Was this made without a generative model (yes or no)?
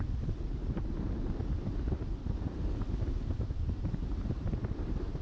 no